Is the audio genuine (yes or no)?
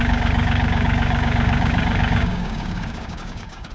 no